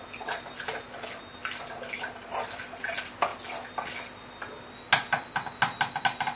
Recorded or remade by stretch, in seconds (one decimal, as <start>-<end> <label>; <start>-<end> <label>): 0.0-6.4 recorded